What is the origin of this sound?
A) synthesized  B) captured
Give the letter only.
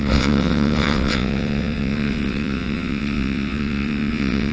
A